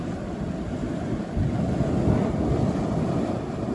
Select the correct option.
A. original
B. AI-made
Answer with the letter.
B